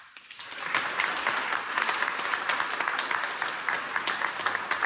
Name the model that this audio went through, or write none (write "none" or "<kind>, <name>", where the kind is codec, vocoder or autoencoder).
none